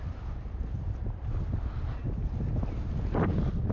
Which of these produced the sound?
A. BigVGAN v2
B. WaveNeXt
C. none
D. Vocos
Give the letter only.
C